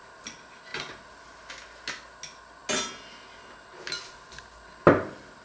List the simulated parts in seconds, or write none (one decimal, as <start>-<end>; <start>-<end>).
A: none